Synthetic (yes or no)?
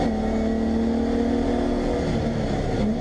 no